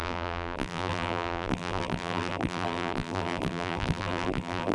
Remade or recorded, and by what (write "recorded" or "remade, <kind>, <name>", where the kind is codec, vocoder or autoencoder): remade, vocoder, BigVGAN v2